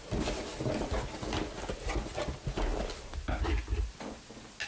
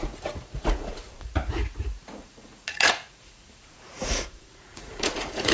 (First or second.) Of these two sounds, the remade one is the second